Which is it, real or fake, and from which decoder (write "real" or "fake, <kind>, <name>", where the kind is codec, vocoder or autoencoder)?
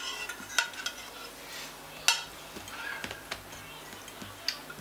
real